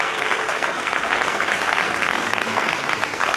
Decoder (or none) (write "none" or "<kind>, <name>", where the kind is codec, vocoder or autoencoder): codec, SNAC